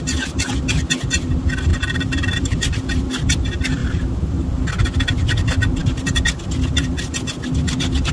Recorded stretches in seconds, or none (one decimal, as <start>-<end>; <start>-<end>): 0.0-1.7; 2.7-3.8; 4.7-8.1